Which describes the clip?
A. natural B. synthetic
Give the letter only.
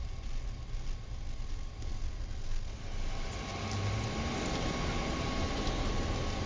A